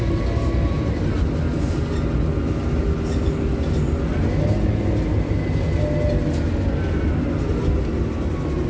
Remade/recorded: recorded